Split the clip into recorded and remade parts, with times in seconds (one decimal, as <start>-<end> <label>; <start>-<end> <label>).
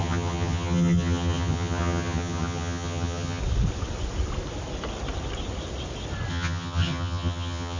0.0-3.4 remade; 3.4-6.3 recorded; 6.3-7.8 remade